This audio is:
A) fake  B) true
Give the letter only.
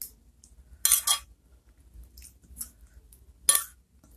B